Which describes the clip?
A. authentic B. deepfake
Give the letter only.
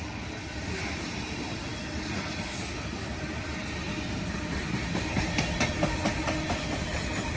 A